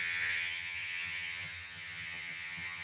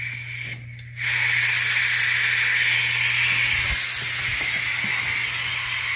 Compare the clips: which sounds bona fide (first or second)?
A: second